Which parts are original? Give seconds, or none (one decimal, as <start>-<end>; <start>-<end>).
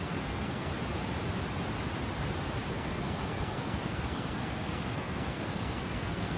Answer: 0.7-2.7